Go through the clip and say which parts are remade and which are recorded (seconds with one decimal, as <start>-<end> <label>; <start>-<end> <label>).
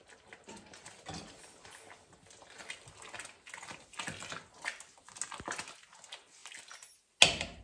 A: 0.0-7.6 recorded